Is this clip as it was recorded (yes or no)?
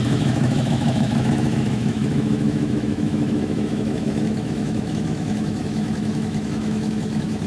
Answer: no